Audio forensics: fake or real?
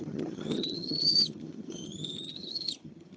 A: fake